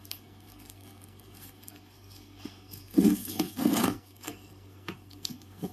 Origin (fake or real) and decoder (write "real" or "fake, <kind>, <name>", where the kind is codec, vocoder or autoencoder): fake, codec, SNAC